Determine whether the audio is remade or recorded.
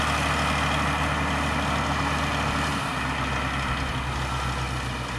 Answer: recorded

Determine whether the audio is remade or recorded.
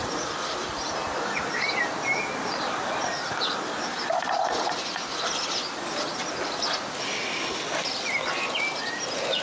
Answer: recorded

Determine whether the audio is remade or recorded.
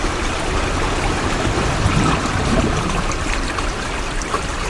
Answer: remade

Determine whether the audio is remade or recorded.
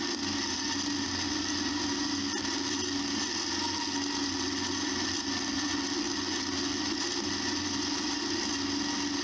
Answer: recorded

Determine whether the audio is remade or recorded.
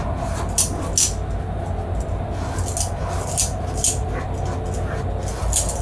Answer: recorded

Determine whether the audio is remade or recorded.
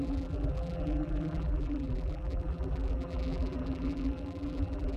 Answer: remade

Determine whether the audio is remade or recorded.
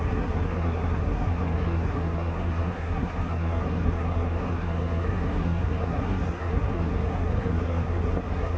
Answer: remade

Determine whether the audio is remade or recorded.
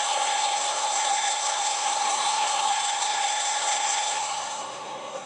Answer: remade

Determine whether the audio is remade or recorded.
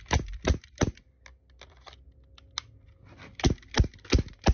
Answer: recorded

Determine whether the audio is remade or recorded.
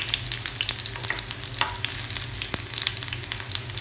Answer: recorded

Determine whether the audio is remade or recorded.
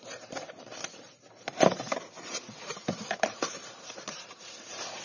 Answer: remade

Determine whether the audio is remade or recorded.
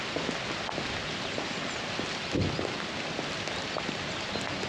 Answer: recorded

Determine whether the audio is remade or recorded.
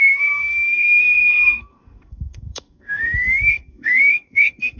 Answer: remade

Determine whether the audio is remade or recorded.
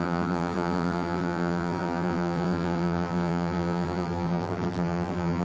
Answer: remade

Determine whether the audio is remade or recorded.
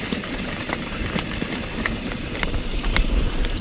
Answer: remade